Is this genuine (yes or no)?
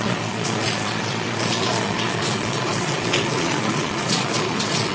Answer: no